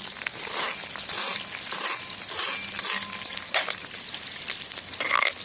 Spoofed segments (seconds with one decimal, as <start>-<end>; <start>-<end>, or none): none